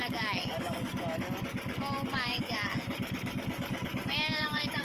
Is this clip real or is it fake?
fake